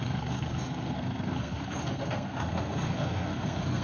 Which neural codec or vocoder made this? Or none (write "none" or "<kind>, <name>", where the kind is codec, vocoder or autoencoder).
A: codec, SNAC